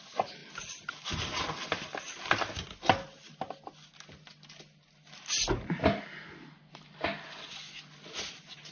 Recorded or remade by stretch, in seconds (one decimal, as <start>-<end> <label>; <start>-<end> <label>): 0.0-8.7 recorded